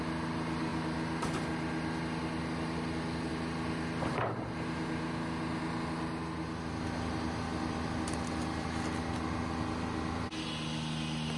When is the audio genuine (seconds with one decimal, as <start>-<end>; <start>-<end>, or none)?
0.0-11.4